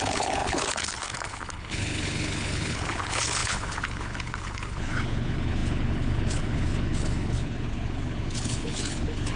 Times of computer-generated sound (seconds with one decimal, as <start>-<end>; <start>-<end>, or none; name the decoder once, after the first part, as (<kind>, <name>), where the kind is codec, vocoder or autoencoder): 0.0-9.4 (codec, HILCodec)